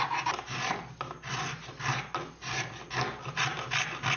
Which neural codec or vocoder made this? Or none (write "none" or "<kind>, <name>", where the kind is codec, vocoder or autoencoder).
none